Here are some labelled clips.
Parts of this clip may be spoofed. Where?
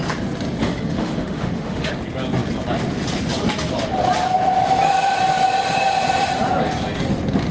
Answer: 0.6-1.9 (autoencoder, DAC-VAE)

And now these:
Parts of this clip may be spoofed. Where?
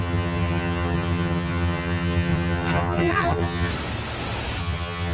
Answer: 0.0-3.7 (vocoder, HiFi-GAN); 4.6-5.1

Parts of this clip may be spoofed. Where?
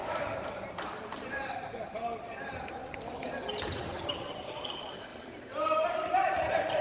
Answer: 0.0-6.8 (vocoder, BigVGAN v2)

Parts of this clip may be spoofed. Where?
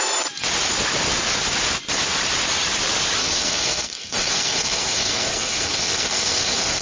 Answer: 3.2-6.8 (codec, SNAC)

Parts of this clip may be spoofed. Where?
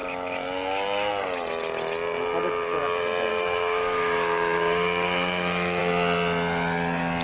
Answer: 3.3-5.8 (autoencoder, DAC-VAE)